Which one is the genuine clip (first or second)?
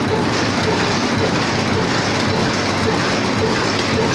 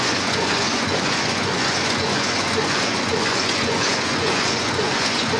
first